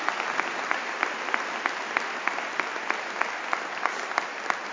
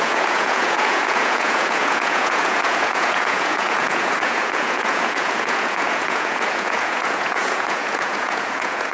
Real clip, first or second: first